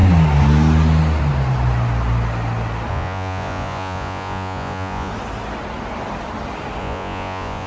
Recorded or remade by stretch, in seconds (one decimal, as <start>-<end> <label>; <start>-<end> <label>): 0.0-2.9 recorded; 2.9-5.1 remade; 5.1-6.8 recorded; 6.8-7.7 remade